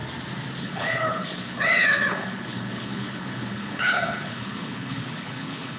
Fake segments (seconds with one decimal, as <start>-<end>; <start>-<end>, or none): 0.6-5.8